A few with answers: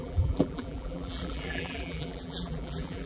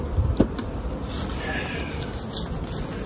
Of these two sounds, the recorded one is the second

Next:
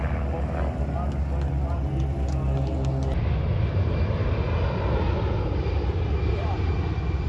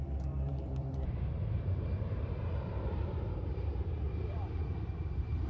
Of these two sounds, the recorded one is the first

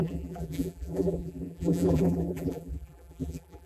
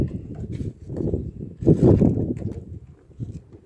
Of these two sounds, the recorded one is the second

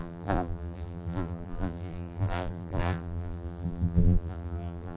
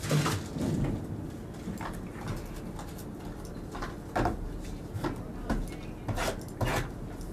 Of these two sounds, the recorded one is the second